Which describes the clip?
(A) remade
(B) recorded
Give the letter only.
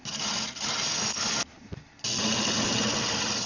B